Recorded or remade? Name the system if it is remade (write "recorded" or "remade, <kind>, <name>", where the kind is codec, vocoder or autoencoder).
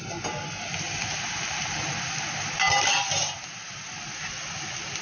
recorded